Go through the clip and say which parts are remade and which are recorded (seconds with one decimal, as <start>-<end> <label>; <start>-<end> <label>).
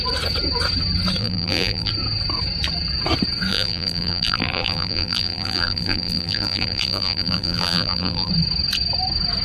0.0-1.2 recorded; 1.2-1.9 remade; 1.9-3.5 recorded; 3.5-8.3 remade; 8.3-9.4 recorded